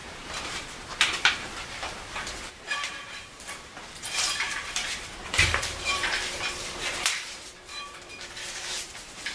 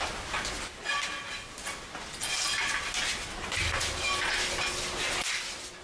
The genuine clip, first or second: second